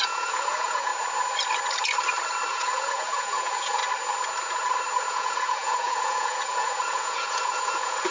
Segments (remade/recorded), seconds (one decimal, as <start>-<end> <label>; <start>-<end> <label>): 0.0-0.9 remade; 0.9-2.5 recorded; 2.5-3.8 remade; 3.8-5.1 recorded; 5.1-8.1 remade